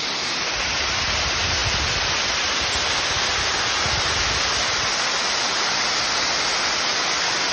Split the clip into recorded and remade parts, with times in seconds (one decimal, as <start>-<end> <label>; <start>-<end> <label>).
0.0-7.5 recorded